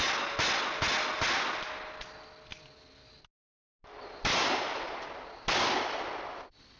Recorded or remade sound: recorded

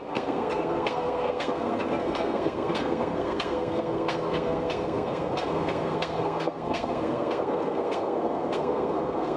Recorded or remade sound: remade